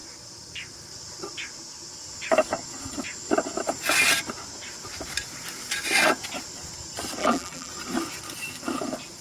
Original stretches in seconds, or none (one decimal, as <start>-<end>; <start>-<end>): 0.0-7.2; 7.7-9.2